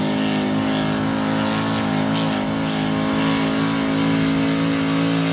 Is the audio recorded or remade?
recorded